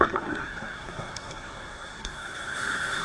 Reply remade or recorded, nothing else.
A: remade